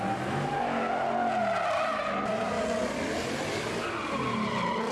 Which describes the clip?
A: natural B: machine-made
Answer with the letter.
A